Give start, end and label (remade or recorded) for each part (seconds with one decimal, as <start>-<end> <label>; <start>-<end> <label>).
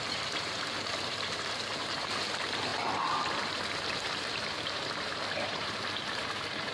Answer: 0.0-6.7 remade